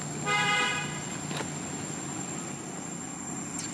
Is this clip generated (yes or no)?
no